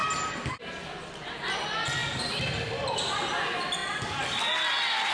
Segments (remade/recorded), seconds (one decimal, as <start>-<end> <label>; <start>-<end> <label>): 0.0-5.1 recorded